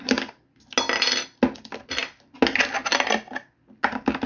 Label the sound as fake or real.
real